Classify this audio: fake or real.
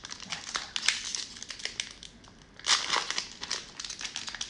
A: real